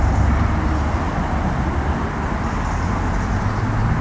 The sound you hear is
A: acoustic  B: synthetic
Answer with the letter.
A